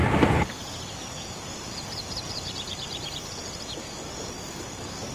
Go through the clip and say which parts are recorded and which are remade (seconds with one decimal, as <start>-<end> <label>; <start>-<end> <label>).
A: 0.0-3.1 remade; 3.1-5.1 recorded